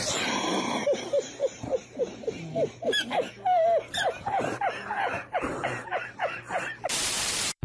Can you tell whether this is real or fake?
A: fake